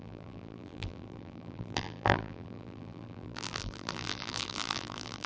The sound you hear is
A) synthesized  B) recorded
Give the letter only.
A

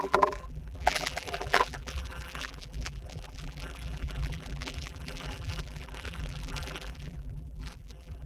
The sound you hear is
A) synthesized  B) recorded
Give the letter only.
A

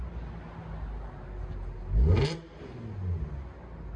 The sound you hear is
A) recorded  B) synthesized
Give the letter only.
A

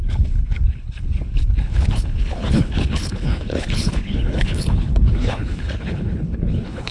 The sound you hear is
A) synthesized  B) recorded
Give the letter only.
A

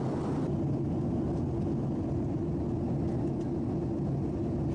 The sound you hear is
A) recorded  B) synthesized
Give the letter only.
A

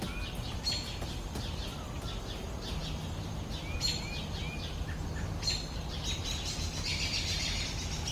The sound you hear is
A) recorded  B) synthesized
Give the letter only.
A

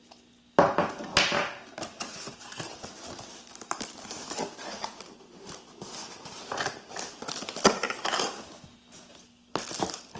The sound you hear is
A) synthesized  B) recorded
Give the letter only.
B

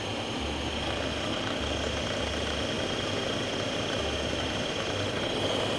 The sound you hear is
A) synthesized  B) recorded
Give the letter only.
B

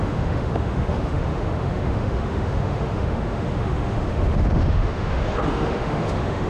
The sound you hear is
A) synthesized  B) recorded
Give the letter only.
A